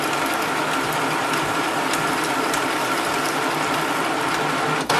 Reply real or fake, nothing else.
real